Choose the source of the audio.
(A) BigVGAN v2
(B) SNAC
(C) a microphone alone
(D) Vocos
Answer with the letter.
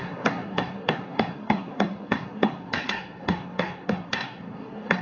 B